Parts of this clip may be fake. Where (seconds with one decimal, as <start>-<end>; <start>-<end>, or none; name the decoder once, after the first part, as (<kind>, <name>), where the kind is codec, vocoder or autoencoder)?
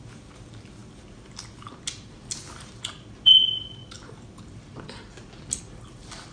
none